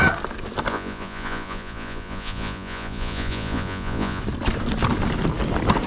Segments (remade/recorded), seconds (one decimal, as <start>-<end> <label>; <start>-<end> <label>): 0.0-0.7 recorded; 0.7-4.2 remade; 4.2-5.9 recorded